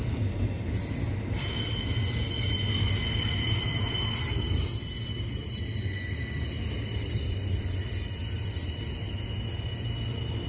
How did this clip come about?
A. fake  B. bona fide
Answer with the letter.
B